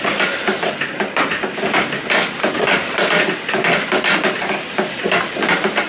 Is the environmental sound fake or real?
real